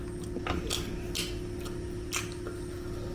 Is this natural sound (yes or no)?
yes